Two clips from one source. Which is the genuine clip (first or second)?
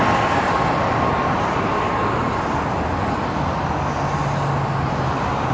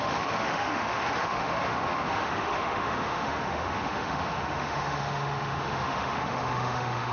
first